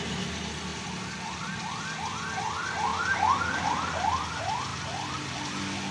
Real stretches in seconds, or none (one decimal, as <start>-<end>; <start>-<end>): 0.0-5.9